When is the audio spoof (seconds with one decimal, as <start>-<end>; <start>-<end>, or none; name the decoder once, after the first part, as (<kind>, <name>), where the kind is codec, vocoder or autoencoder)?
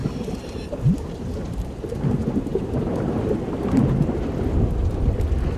0.0-3.4 (vocoder, BigVGAN v2)